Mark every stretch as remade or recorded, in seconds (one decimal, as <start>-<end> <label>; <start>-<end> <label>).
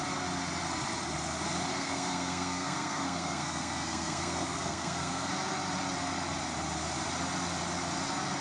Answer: 0.0-1.7 recorded; 1.7-5.3 remade; 5.3-8.4 recorded